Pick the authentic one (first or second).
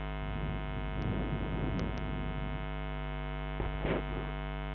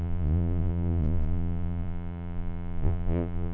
first